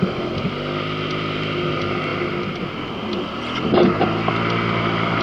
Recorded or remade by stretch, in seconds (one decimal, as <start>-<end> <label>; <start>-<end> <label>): 0.0-5.2 recorded